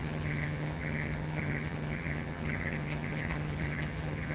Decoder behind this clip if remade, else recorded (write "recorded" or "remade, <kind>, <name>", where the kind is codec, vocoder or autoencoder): remade, vocoder, HiFi-GAN